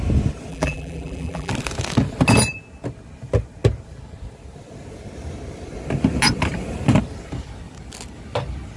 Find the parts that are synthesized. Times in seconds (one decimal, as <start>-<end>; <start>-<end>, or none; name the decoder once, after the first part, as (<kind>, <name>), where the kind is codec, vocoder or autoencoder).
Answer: 0.5-1.5 (vocoder, BigVGAN v2)